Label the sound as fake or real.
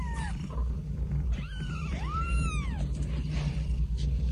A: fake